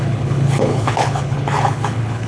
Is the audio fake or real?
fake